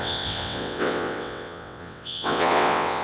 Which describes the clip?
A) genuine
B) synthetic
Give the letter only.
B